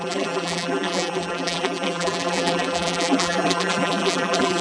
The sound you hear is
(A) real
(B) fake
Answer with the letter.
B